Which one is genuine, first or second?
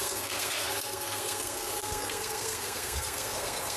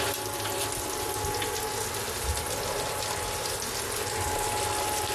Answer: second